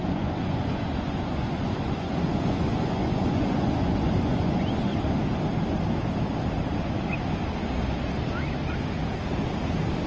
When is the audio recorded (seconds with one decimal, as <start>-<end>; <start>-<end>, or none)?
4.9-10.1